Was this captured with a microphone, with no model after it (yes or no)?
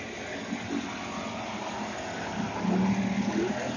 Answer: yes